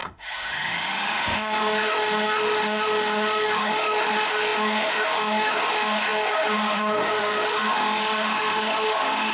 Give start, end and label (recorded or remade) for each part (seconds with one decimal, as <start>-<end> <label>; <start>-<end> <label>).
0.0-9.3 remade